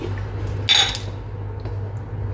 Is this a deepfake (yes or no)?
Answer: no